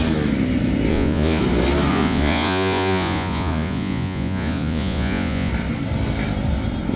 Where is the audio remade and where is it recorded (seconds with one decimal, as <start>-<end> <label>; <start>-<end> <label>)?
0.0-0.9 recorded; 0.9-1.4 remade; 1.4-1.9 recorded; 1.9-5.5 remade; 5.5-7.0 recorded